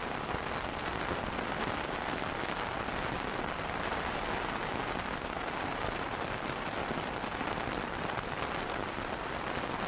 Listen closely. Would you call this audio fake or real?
fake